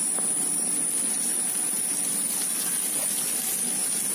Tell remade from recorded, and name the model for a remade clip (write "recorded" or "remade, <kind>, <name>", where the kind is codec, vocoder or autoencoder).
recorded